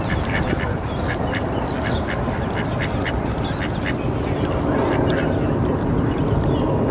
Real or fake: fake